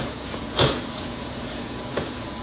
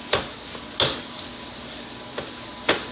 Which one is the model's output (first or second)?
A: first